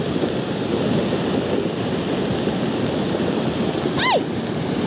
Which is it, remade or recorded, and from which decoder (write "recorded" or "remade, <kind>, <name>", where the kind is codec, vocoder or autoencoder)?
recorded